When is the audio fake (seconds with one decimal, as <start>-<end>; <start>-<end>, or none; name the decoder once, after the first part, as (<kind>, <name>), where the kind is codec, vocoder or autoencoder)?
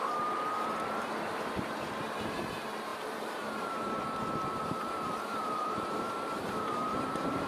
0.0-7.5 (vocoder, BigVGAN v2)